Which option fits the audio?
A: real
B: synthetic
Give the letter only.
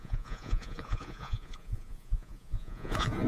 B